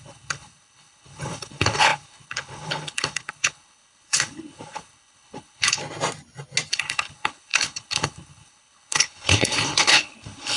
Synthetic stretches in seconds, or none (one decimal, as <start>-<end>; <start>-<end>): 0.0-5.8; 6.7-10.6